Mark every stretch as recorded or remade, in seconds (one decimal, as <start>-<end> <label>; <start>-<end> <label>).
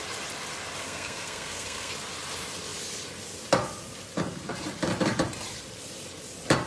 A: 0.0-0.8 recorded; 0.8-1.9 remade; 1.9-6.7 recorded